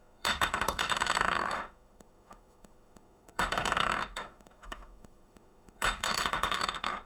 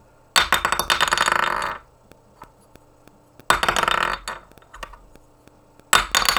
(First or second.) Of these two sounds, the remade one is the first